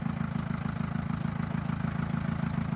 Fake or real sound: real